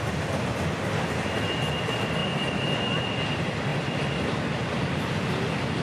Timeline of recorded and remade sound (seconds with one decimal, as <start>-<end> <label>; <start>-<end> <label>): 0.0-2.2 recorded; 2.2-3.2 remade; 3.2-3.7 recorded; 3.7-5.3 remade; 5.3-5.8 recorded